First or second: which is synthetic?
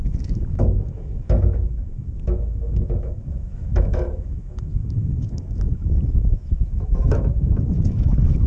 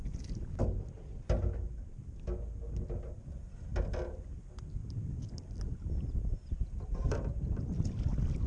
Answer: first